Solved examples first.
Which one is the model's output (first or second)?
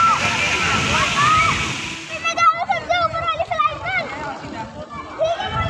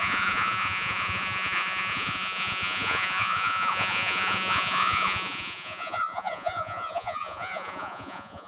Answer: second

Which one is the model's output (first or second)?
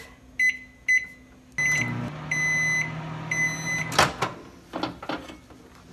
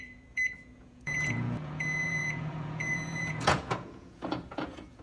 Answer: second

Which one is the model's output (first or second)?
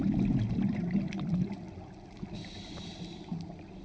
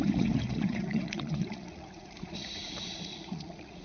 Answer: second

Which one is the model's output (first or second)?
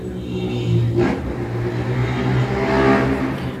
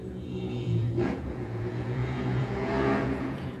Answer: second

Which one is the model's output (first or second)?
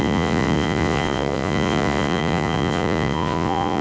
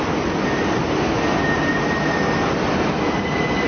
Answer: first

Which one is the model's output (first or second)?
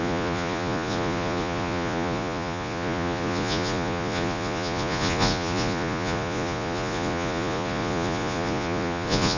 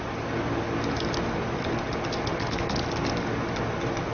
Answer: first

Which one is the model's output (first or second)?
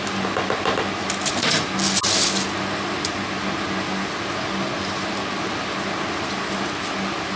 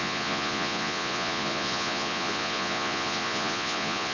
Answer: second